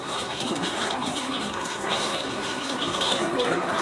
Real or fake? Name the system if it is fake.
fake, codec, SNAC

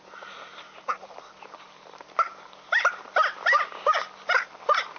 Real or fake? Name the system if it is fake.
real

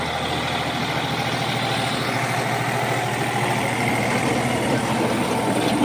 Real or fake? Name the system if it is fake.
real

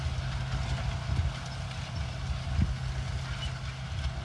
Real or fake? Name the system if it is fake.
real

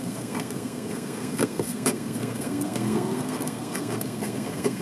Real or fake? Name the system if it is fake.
fake, codec, SNAC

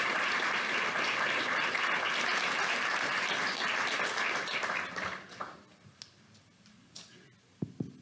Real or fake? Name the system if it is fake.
real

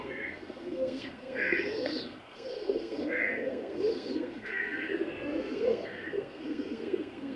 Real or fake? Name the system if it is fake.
fake, codec, SNAC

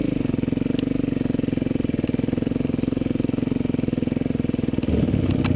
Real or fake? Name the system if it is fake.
real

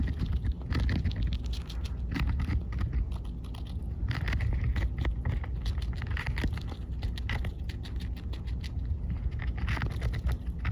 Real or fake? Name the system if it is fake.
real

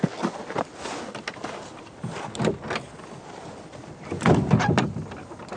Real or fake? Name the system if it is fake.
real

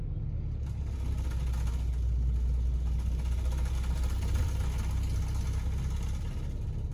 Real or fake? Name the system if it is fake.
real